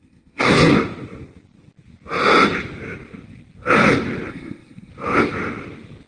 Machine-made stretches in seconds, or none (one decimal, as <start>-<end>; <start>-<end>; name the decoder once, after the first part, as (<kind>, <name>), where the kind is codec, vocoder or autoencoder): 0.0-0.7 (codec, SNAC); 4.3-4.9